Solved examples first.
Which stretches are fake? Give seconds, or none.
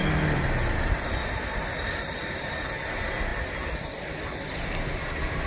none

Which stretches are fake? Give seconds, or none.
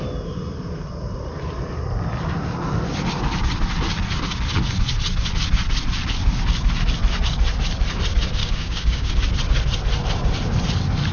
8.4-9.1